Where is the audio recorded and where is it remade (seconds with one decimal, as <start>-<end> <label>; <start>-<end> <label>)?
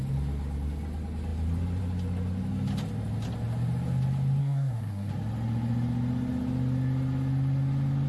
0.0-4.4 recorded; 4.4-5.1 remade; 5.1-8.1 recorded